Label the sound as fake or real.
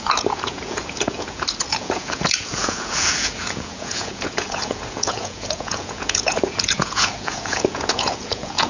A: fake